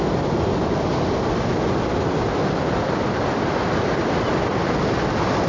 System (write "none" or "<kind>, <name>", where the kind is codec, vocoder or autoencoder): none